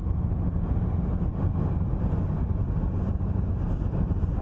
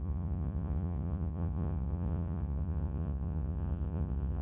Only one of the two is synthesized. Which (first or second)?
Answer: second